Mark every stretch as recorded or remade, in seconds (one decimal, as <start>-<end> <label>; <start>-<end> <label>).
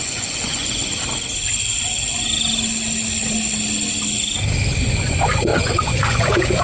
0.0-0.8 remade; 0.8-4.8 recorded; 4.8-6.6 remade